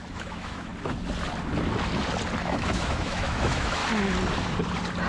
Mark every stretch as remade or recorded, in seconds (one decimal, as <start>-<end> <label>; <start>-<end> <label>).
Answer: 0.0-0.7 remade; 0.7-2.4 recorded; 2.4-3.8 remade; 3.8-5.1 recorded